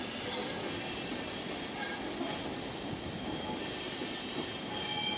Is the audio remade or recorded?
recorded